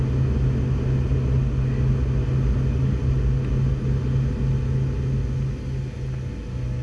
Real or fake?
real